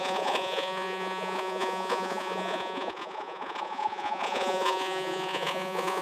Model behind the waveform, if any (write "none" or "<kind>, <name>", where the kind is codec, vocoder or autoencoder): vocoder, Vocos